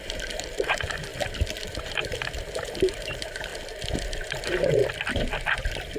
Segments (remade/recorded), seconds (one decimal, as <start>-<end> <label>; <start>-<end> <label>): 0.0-1.1 remade; 1.1-1.7 recorded; 1.7-3.5 remade; 3.5-4.1 recorded; 4.1-4.8 remade; 4.8-6.0 recorded